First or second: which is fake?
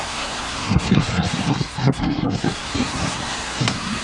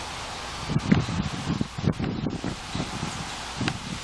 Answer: first